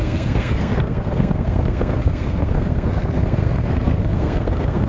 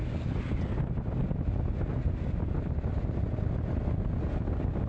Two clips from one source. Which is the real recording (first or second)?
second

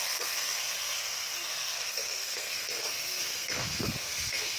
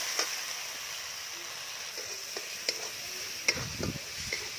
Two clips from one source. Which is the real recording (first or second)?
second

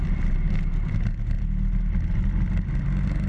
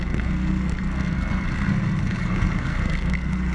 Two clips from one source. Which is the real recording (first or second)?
first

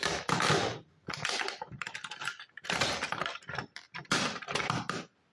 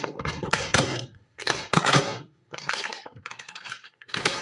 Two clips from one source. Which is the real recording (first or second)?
first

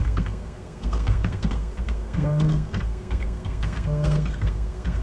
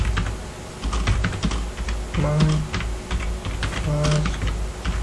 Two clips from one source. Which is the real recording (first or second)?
second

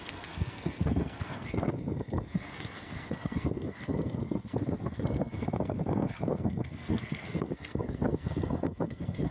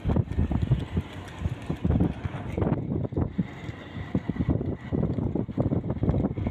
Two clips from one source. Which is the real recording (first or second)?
second